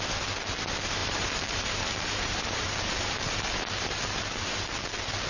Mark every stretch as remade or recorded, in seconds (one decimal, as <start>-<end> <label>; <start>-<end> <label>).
0.0-1.0 recorded; 1.0-4.2 remade; 4.2-5.3 recorded